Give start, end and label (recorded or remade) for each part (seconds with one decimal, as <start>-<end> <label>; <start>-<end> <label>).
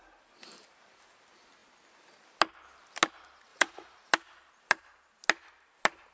0.0-3.5 recorded; 3.5-4.1 remade; 4.1-6.1 recorded